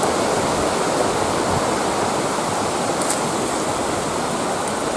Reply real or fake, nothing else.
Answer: real